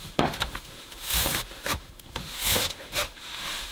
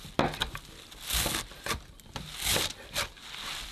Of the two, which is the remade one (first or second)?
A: first